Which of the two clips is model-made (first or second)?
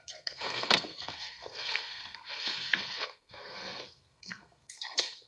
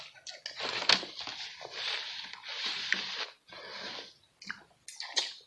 first